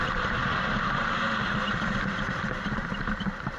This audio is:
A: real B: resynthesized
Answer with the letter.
B